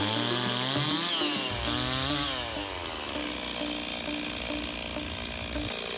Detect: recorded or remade recorded